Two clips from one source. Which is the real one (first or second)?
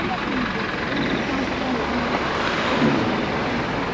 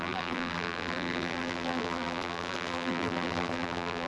first